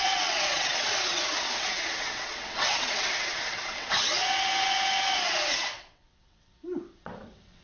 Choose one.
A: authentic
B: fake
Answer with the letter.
B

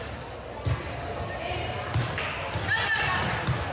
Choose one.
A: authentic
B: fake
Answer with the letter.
A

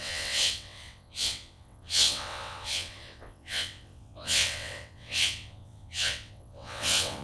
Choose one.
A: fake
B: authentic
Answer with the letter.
A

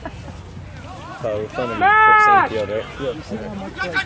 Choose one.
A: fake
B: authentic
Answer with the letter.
B